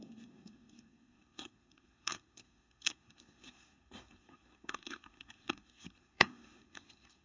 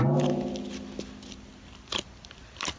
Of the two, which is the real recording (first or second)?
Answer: second